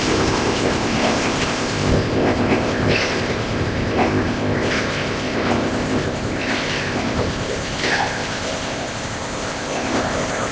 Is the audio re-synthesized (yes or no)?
yes